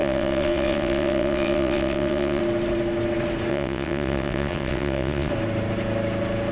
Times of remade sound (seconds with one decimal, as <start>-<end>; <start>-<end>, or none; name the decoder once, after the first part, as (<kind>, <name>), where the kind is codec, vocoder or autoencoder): 0.0-2.4 (vocoder, WaveNeXt); 3.5-5.3